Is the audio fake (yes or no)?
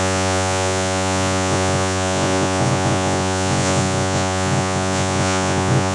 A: yes